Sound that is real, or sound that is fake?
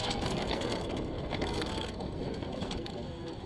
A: fake